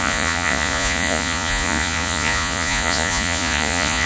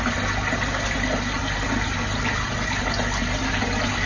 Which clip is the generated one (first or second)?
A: first